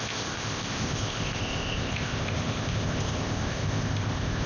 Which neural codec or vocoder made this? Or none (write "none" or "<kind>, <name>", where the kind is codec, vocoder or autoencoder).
codec, ZipCodec